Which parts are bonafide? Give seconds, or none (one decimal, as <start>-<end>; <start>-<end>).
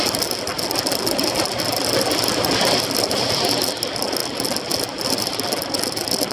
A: 0.0-6.3